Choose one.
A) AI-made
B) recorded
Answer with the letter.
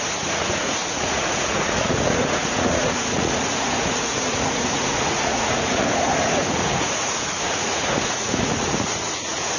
A